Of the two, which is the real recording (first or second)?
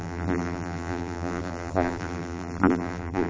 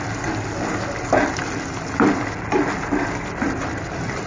second